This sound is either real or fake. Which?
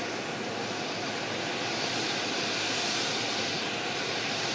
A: real